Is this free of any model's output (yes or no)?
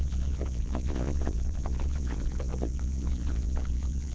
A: no